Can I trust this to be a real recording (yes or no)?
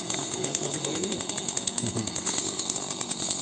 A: no